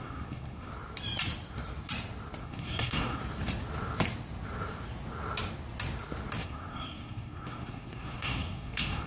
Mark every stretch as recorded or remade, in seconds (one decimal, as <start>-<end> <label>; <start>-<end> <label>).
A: 0.0-0.7 remade; 0.7-2.4 recorded; 2.4-3.2 remade; 3.2-6.4 recorded; 6.4-9.1 remade